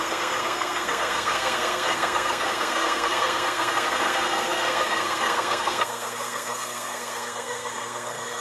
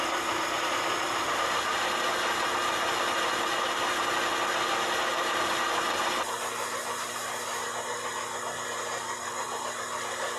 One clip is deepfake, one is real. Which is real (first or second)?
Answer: second